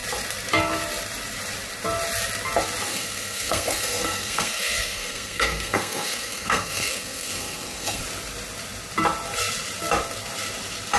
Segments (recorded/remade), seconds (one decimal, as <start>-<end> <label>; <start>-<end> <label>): 0.0-2.9 recorded; 2.9-8.0 remade; 8.0-11.0 recorded